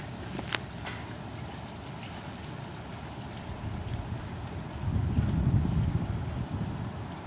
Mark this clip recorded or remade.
recorded